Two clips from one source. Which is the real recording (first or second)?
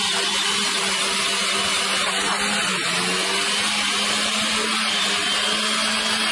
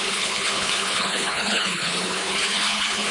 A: first